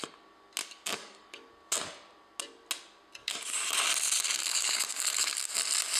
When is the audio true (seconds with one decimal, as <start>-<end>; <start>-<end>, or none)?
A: 0.0-0.6; 1.5-3.2; 3.8-4.4; 5.5-6.0